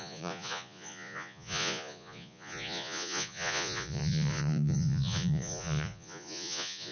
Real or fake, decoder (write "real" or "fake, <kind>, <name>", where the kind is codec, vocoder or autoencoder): fake, vocoder, Vocos